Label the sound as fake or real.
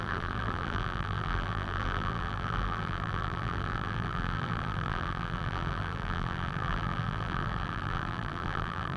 fake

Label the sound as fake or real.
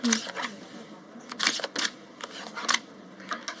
real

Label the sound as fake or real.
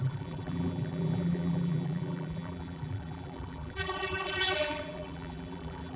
fake